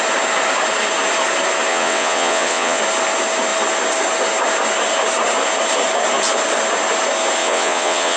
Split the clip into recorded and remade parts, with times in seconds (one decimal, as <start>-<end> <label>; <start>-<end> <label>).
0.0-1.7 recorded; 1.7-2.8 remade; 2.8-7.4 recorded; 7.4-8.2 remade